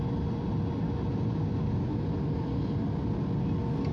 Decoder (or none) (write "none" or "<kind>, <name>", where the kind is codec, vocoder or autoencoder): none